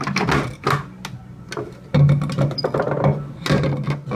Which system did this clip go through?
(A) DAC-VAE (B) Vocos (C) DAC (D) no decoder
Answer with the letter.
D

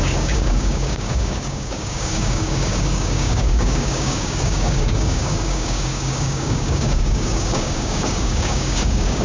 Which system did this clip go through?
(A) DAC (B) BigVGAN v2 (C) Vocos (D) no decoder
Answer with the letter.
A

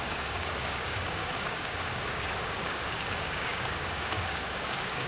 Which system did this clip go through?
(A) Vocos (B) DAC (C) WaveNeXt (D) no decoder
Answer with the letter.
B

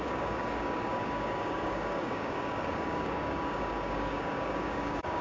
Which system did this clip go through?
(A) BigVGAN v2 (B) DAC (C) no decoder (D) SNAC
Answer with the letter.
B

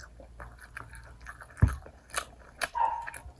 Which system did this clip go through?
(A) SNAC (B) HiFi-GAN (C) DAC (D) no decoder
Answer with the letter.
D